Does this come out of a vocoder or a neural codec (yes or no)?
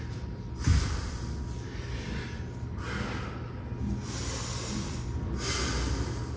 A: no